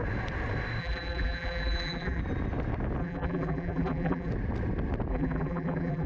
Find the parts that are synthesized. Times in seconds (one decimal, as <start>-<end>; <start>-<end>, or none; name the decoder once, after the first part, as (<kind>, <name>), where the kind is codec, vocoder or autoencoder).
0.8-2.2 (vocoder, BigVGAN v2); 3.0-4.3; 5.1-6.1